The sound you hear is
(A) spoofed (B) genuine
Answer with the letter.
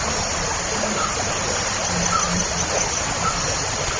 B